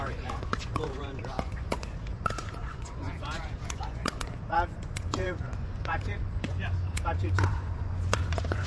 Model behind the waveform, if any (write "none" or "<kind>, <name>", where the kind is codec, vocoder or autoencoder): vocoder, Vocos